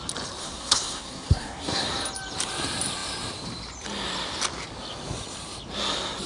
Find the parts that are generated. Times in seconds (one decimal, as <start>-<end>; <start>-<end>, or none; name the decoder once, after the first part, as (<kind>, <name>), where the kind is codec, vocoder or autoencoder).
0.4-1.9 (codec, SNAC)